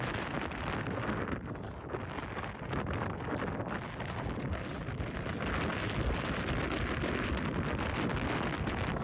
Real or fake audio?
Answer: real